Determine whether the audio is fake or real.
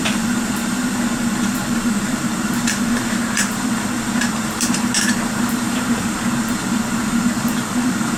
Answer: fake